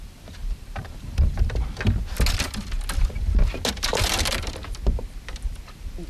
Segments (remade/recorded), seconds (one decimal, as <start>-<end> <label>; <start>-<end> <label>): 0.0-0.4 recorded; 0.4-1.8 remade; 1.8-3.9 recorded; 3.9-4.5 remade; 4.5-6.1 recorded